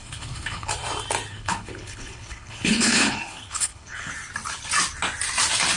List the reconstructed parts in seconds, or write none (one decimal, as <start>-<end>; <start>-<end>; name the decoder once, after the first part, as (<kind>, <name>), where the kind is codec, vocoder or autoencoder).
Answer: 0.0-0.7 (codec, HILCodec); 1.3-4.1